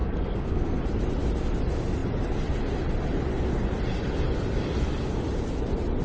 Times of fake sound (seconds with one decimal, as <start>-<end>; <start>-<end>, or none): 0.0-0.8